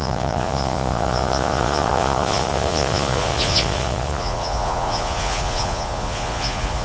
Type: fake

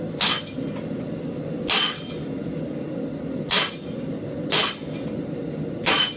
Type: real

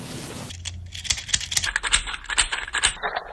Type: real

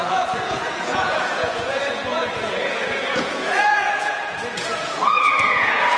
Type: fake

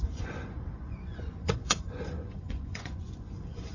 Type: fake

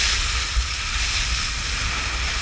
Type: real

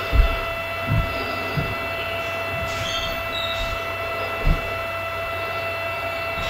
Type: real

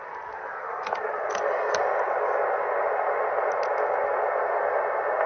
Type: real